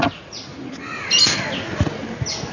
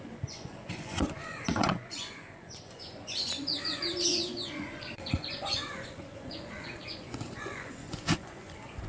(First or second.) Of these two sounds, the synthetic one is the second